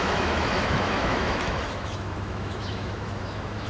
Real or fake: fake